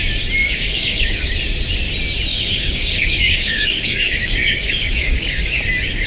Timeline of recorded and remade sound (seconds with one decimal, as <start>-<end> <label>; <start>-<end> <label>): 0.0-0.4 recorded; 0.4-1.3 remade; 1.3-2.3 recorded; 2.3-5.6 remade; 5.6-6.1 recorded

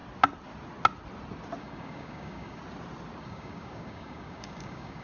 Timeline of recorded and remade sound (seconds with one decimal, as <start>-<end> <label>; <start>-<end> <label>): 0.0-1.6 recorded; 1.6-2.6 remade; 2.6-3.2 recorded; 3.2-5.0 remade

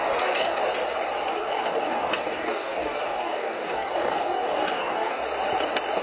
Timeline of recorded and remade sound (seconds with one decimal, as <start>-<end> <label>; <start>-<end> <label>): 0.0-0.6 remade; 0.6-1.3 recorded; 1.3-5.2 remade; 5.2-6.0 recorded

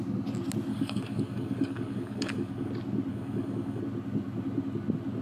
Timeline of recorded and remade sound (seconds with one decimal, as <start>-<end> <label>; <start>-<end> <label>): 0.0-0.7 recorded; 0.7-2.7 remade; 2.7-3.1 recorded; 3.1-3.8 remade; 3.8-5.2 recorded

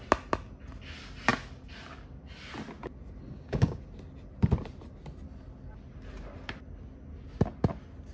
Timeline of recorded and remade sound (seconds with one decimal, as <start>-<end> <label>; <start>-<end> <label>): 0.0-3.3 recorded; 3.3-3.8 remade; 3.8-8.1 recorded

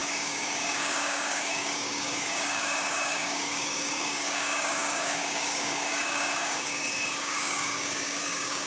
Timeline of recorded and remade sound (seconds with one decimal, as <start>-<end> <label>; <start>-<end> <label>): 0.0-8.7 remade